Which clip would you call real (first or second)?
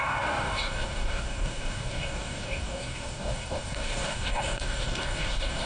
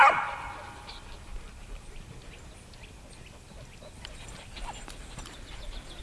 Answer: second